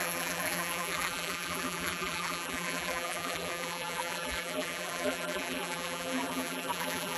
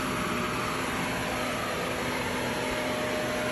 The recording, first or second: second